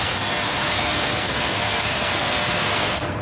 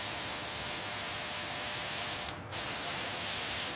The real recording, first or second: second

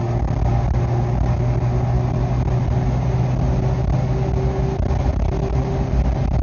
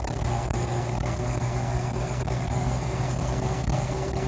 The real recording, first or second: first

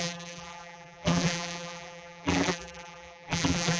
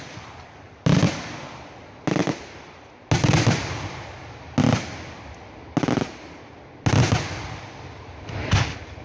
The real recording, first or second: second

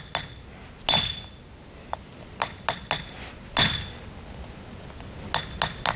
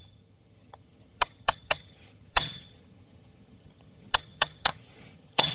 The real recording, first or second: first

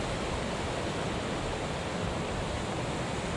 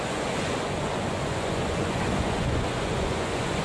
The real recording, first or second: first